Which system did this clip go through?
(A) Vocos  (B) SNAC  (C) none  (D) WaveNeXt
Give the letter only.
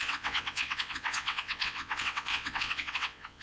D